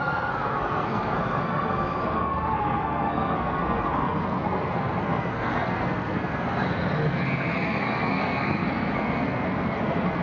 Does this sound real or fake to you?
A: fake